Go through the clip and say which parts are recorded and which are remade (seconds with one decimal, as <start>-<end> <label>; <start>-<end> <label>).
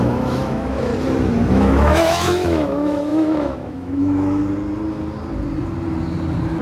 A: 0.0-0.9 remade; 0.9-1.5 recorded; 1.5-4.4 remade; 4.4-6.6 recorded